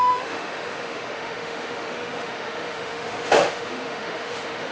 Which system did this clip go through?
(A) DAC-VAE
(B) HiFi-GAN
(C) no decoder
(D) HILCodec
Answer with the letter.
A